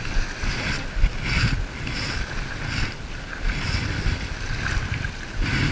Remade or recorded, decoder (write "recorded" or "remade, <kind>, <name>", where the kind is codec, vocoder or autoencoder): recorded